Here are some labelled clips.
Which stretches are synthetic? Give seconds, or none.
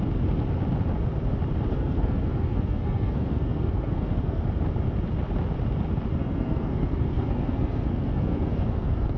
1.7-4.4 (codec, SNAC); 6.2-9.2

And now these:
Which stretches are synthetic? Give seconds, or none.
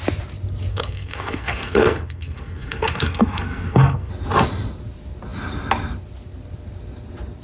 0.7-4.1 (codec, SNAC)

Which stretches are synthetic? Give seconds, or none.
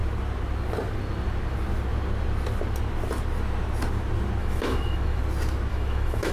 4.4-5.2 (autoencoder, DAC-VAE); 5.7-6.3